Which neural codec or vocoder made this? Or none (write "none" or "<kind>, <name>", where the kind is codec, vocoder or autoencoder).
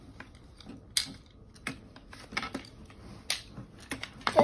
none